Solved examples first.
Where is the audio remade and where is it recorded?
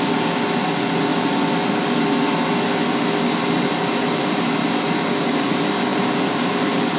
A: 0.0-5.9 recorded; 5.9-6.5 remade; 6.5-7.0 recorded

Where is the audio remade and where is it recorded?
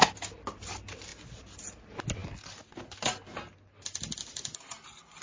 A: 0.0-5.2 recorded